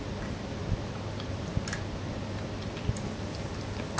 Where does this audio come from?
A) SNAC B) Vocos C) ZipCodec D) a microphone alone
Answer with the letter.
D